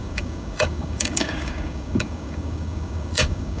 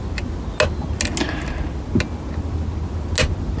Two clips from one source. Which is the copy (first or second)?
first